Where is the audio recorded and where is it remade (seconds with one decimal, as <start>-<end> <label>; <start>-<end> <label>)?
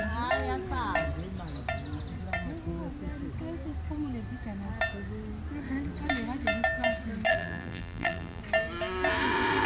0.0-7.3 recorded; 7.3-8.4 remade; 8.4-9.7 recorded